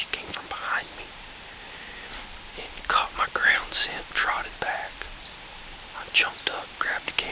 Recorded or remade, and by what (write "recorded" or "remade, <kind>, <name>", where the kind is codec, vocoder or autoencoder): recorded